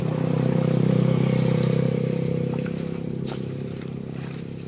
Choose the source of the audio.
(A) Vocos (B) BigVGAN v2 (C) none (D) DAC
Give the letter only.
B